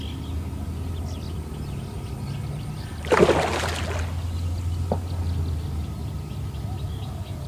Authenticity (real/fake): real